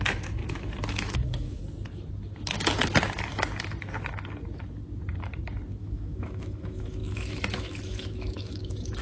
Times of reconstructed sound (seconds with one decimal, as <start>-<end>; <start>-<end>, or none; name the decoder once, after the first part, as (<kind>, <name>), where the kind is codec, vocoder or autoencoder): 0.0-0.4 (autoencoder, DAC-VAE); 0.9-1.6; 5.8-9.0